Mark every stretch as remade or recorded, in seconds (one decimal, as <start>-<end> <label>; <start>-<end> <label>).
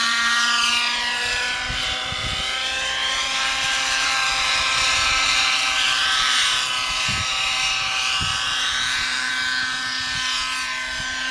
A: 0.0-0.7 remade; 0.7-3.0 recorded; 3.0-6.7 remade; 6.7-8.3 recorded; 8.3-9.3 remade; 9.3-11.3 recorded